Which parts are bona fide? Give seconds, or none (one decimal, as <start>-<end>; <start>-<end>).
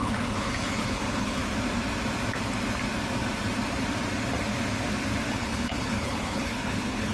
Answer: 1.4-5.3